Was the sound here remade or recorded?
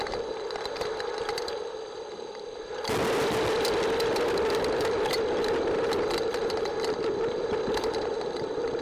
recorded